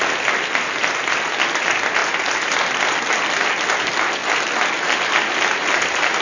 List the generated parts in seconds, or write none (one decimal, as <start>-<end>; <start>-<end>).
none